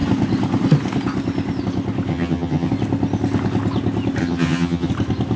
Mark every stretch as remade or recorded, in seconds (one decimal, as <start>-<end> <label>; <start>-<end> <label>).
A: 0.0-2.1 recorded; 2.1-2.7 remade; 2.7-4.2 recorded; 4.2-4.9 remade; 4.9-5.4 recorded